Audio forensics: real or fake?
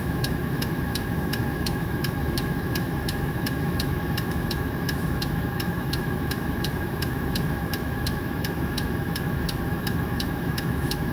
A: fake